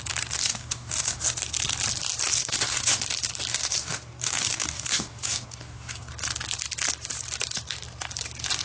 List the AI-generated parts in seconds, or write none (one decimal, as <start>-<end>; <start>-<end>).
0.5-1.2; 2.4-3.0; 3.5-6.1